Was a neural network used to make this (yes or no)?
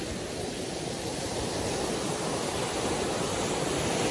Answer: no